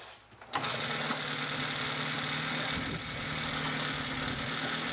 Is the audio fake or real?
real